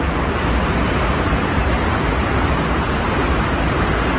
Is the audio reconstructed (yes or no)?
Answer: no